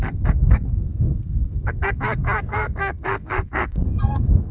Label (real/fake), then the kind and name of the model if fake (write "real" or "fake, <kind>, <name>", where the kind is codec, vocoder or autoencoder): fake, codec, SNAC